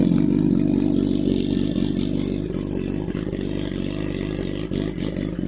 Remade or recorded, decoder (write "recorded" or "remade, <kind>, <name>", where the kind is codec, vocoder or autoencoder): recorded